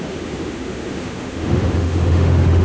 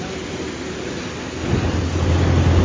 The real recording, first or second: second